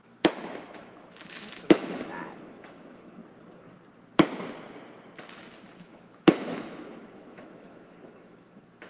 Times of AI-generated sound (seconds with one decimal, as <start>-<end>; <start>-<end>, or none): 0.0-3.2; 5.8-8.9